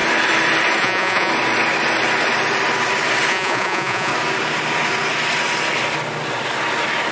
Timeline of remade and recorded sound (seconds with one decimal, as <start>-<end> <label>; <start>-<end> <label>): 0.0-0.8 recorded; 0.8-1.3 remade; 1.3-3.3 recorded; 3.3-4.1 remade; 4.1-7.1 recorded